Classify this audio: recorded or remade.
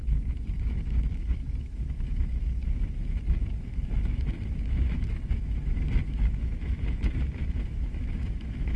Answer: remade